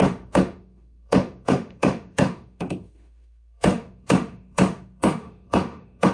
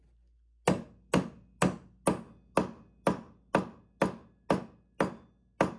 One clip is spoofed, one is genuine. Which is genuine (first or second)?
second